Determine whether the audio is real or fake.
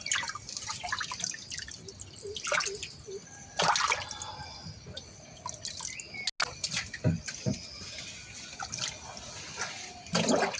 real